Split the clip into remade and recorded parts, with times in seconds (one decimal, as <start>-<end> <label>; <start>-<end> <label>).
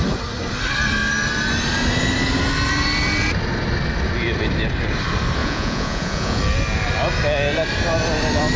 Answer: 0.0-5.4 recorded; 5.4-6.4 remade; 6.4-8.6 recorded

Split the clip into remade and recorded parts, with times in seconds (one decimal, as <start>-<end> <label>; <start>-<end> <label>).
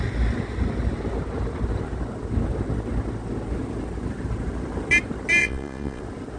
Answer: 0.0-5.4 recorded; 5.4-6.0 remade; 6.0-6.4 recorded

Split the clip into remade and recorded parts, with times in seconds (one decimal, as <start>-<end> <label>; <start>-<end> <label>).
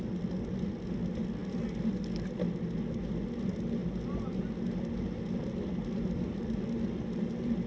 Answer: 0.0-7.7 recorded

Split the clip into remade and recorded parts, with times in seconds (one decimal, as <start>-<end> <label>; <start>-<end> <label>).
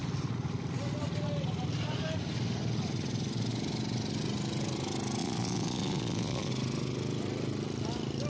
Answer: 0.0-5.2 recorded; 5.2-6.5 remade; 6.5-8.3 recorded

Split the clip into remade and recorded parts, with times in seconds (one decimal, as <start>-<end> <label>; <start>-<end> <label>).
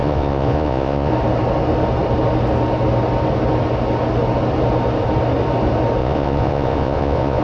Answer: 0.0-1.1 remade; 1.1-6.0 recorded; 6.0-7.4 remade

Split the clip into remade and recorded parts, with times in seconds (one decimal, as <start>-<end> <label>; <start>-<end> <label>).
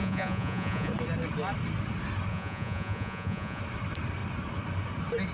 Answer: 0.0-0.9 remade; 0.9-2.3 recorded; 2.3-3.6 remade; 3.6-5.3 recorded